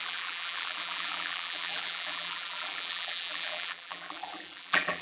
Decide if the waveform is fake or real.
fake